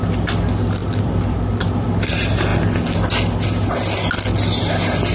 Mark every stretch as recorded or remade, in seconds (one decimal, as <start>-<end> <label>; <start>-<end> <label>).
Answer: 0.0-0.8 recorded; 0.8-1.5 remade; 1.5-2.5 recorded; 2.5-3.1 remade; 3.1-5.1 recorded